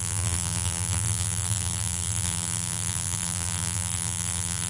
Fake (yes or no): yes